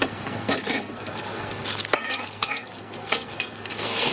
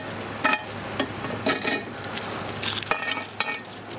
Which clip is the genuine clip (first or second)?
second